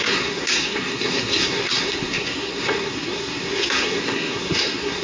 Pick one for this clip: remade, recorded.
remade